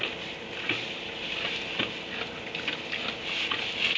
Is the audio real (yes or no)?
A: yes